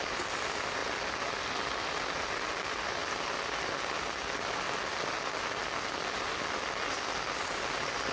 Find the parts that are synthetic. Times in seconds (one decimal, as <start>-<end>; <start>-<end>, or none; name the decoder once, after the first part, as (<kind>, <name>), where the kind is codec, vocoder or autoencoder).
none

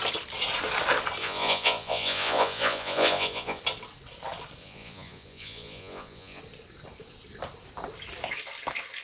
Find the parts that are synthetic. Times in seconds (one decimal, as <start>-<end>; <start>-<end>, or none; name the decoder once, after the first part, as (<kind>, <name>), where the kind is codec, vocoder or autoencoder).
1.2-3.6 (vocoder, Vocos); 4.6-6.4

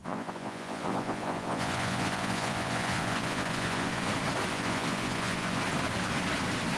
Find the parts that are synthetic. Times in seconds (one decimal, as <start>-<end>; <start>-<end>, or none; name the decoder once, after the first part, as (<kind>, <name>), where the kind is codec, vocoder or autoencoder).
0.0-4.1 (vocoder, Vocos); 4.5-5.6

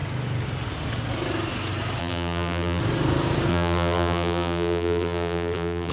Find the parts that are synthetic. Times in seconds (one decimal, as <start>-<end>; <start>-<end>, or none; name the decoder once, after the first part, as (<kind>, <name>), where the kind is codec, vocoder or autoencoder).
2.0-2.8 (vocoder, BigVGAN v2); 3.5-5.9

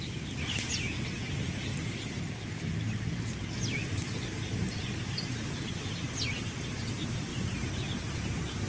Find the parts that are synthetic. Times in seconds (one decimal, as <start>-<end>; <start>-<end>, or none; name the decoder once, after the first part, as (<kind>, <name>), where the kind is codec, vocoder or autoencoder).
none